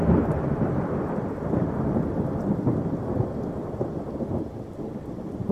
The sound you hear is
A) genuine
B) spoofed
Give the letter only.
B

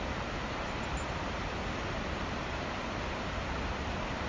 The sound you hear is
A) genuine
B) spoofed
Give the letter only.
A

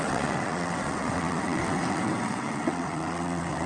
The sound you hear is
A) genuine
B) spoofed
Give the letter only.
B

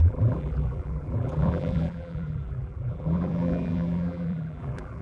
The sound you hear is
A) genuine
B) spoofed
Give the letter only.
B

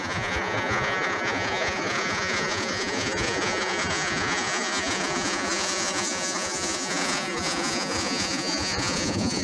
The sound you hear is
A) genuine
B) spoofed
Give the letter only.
B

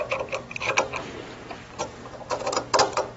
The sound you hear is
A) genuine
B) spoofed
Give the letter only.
A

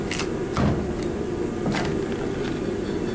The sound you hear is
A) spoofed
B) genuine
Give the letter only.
B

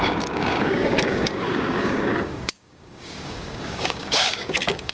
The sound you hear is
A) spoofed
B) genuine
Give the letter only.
A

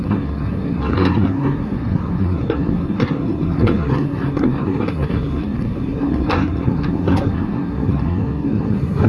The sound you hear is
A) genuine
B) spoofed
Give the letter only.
B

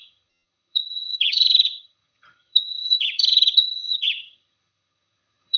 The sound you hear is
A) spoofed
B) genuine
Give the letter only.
A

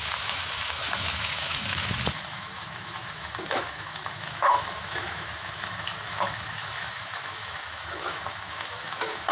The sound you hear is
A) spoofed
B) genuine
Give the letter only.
A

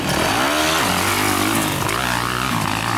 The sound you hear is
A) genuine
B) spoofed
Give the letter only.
A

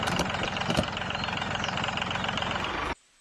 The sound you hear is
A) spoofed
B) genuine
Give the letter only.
A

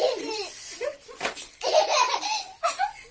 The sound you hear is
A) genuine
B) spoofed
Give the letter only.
B